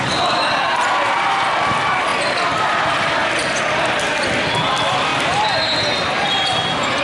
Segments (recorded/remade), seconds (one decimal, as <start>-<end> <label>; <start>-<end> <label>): 0.0-7.0 recorded